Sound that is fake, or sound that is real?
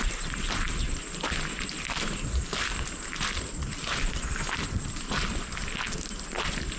real